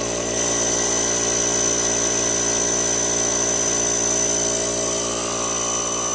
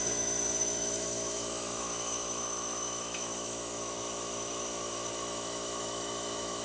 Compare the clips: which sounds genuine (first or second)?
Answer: first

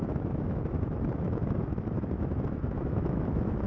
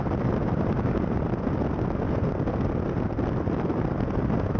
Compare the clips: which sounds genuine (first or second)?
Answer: second